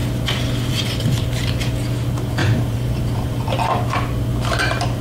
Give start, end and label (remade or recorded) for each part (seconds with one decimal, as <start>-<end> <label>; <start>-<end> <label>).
0.0-2.4 recorded; 2.4-3.5 remade; 3.5-5.0 recorded